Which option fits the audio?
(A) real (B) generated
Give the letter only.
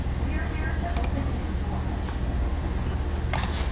A